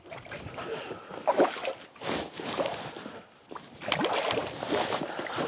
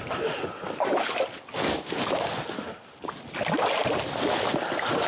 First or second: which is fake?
first